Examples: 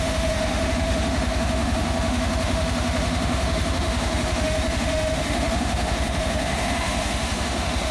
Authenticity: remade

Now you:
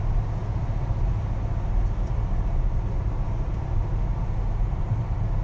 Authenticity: recorded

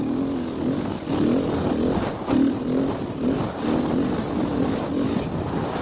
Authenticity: recorded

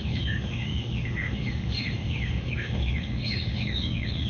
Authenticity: remade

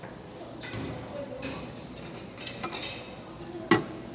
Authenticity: recorded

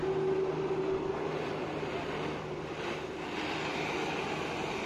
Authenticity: recorded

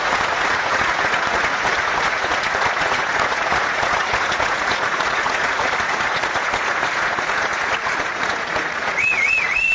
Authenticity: remade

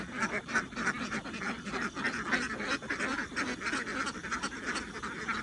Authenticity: recorded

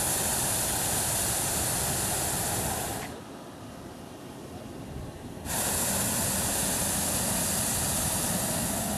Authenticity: recorded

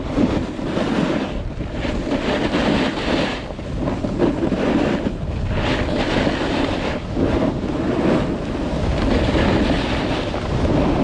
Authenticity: recorded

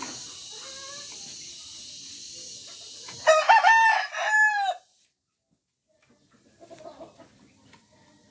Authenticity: recorded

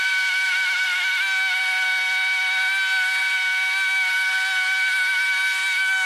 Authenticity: recorded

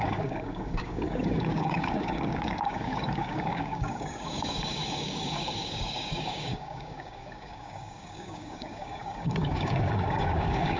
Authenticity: remade